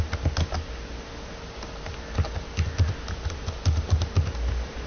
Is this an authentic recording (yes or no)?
yes